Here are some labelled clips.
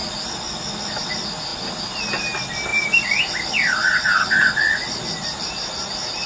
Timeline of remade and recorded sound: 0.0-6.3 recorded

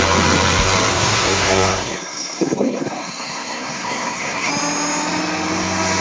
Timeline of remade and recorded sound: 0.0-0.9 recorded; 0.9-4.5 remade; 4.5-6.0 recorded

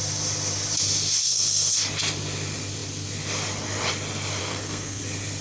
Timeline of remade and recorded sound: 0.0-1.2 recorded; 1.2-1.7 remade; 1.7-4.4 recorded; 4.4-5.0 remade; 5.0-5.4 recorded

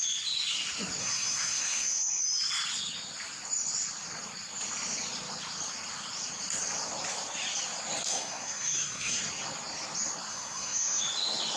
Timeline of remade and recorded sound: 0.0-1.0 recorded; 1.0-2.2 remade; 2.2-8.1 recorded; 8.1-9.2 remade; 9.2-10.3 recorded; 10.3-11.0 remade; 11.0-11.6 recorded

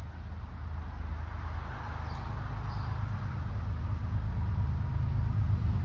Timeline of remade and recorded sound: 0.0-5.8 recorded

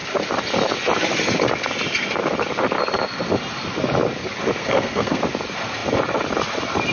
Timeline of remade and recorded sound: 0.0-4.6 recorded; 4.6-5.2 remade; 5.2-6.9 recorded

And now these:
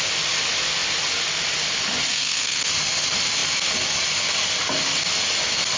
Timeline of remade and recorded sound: 0.0-2.1 recorded; 2.1-2.7 remade; 2.7-5.8 recorded